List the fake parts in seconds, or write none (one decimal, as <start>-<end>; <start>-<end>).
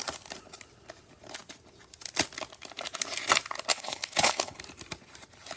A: 3.7-4.6